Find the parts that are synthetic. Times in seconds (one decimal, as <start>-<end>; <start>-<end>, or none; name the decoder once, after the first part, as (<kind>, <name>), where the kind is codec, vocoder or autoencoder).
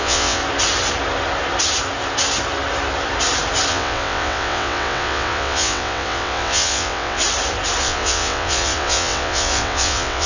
0.0-0.4 (vocoder, WaveNeXt); 3.7-7.2; 7.8-10.3